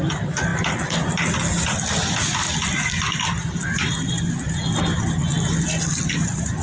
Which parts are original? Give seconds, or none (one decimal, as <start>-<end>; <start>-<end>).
0.0-6.6